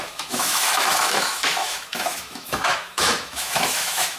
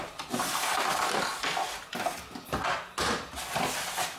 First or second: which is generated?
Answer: first